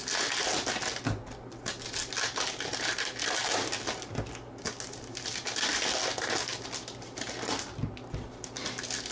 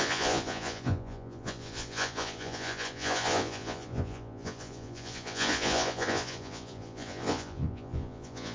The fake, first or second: second